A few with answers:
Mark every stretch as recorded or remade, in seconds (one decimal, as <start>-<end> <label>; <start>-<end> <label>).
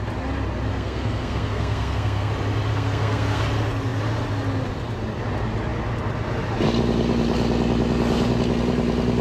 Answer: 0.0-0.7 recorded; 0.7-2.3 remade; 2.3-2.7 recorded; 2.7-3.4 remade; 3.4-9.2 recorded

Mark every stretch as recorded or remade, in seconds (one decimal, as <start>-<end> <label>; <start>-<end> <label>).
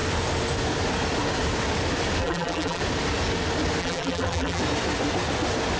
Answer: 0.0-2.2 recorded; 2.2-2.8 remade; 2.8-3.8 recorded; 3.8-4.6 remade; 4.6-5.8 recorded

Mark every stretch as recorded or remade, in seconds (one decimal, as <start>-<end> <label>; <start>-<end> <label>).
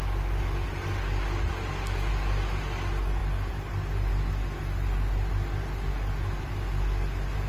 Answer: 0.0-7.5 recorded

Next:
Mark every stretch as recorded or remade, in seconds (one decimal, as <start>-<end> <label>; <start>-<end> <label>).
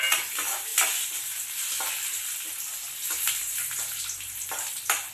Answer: 0.0-5.1 recorded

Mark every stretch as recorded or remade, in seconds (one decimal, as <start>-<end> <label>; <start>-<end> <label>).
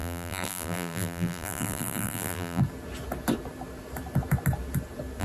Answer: 0.0-2.6 remade; 2.6-5.2 recorded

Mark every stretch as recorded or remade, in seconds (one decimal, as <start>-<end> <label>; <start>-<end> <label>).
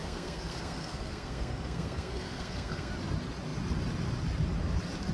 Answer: 0.0-2.9 remade; 2.9-5.1 recorded